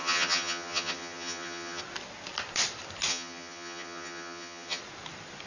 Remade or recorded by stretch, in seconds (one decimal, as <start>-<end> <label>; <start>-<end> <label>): 0.0-1.8 remade; 1.8-3.1 recorded; 3.1-4.8 remade; 4.8-5.5 recorded